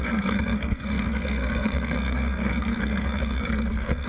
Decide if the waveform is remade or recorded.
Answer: remade